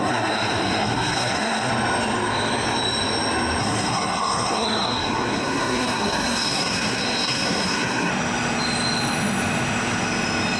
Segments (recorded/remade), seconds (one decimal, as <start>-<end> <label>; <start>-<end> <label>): 0.0-1.7 remade; 1.7-3.6 recorded; 3.6-8.1 remade; 8.1-10.6 recorded

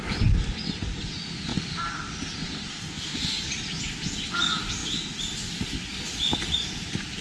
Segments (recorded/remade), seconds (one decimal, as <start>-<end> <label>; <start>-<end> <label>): 0.0-2.7 recorded; 2.7-3.5 remade; 3.5-7.2 recorded